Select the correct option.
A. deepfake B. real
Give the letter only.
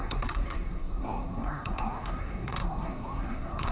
A